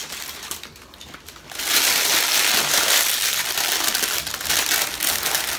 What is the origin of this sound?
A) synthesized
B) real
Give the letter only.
B